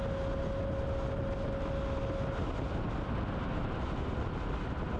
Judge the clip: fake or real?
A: real